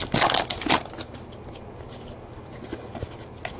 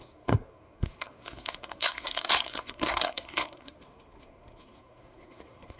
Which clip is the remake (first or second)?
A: second